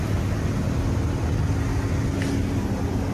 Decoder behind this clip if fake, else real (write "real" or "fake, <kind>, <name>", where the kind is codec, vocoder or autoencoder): real